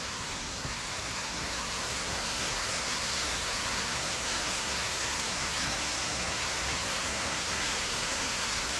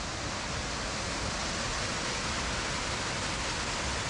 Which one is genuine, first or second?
second